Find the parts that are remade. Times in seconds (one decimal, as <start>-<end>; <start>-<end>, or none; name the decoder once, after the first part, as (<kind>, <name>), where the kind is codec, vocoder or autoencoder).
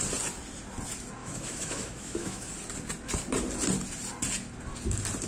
1.2-2.5 (autoencoder, DAC-VAE)